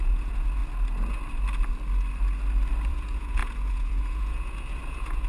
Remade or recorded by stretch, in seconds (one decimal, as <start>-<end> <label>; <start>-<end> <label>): 0.0-0.6 remade; 0.6-2.9 recorded; 2.9-5.3 remade